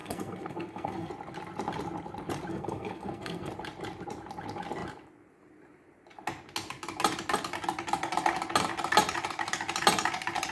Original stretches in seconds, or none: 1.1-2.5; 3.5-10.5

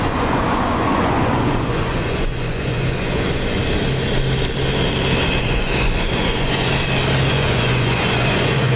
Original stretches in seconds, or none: 3.6-5.4; 6.7-7.3

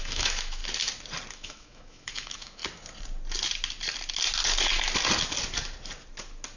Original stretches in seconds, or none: 0.6-1.3; 2.6-6.6

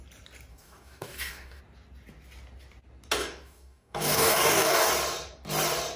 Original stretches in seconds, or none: 0.0-0.5; 1.6-3.2; 4.9-6.0

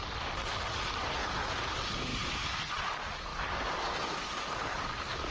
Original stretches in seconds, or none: 0.0-1.2; 1.7-5.3